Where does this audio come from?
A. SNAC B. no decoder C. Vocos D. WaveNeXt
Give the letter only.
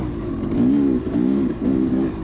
B